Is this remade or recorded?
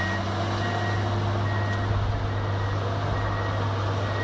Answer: recorded